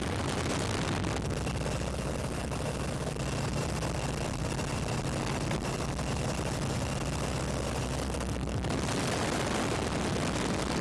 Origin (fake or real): real